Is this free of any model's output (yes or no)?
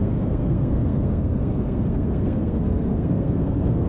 no